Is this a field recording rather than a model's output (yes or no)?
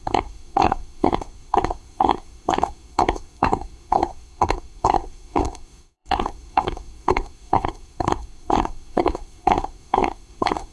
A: no